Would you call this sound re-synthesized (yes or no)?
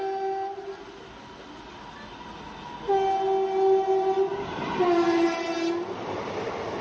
no